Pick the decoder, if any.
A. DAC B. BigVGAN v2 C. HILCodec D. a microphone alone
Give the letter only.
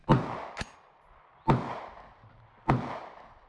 D